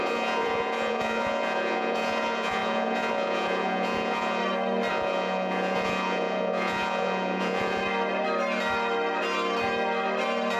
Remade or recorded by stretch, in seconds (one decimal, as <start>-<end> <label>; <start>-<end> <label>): 0.0-4.4 remade; 4.4-4.9 recorded; 4.9-7.8 remade; 7.8-10.6 recorded